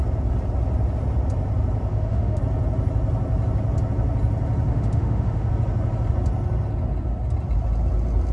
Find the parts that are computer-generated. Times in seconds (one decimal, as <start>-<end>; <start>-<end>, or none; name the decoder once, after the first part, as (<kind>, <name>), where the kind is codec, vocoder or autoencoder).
1.9-2.4 (autoencoder, DAC-VAE); 4.7-5.5